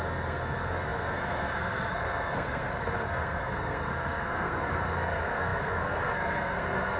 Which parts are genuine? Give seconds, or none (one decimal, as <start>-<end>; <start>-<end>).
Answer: none